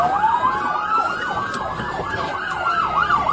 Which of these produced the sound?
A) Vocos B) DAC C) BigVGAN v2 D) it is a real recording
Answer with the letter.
D